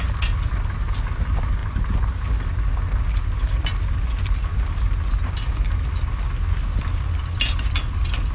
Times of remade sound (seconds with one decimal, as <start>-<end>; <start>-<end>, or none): none